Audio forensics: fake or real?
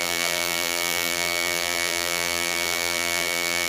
fake